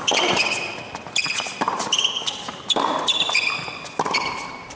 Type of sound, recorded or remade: recorded